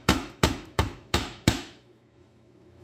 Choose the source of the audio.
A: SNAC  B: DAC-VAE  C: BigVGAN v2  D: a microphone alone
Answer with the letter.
B